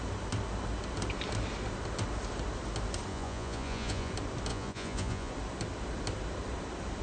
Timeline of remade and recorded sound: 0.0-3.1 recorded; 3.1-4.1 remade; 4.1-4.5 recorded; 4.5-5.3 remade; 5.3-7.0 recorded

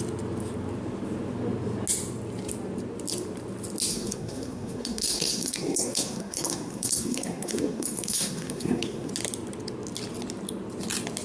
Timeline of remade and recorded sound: 0.0-3.9 recorded; 3.9-9.1 remade; 9.1-11.2 recorded

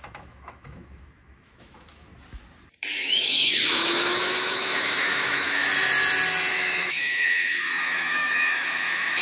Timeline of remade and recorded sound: 0.0-2.1 remade; 2.1-2.9 recorded; 2.9-5.7 remade; 5.7-6.5 recorded; 6.5-9.2 remade

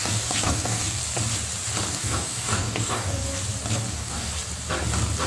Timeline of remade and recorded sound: 0.0-1.0 remade; 1.0-1.9 recorded; 1.9-3.2 remade; 3.2-3.9 recorded; 3.9-4.3 remade; 4.3-5.3 recorded

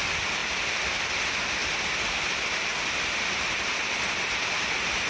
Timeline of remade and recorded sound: 0.0-5.1 recorded

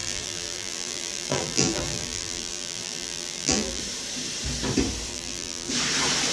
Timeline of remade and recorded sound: 0.0-3.8 remade; 3.8-5.1 recorded; 5.1-5.7 remade; 5.7-6.3 recorded